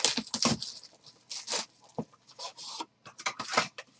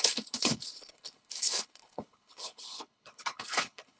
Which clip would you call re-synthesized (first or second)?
second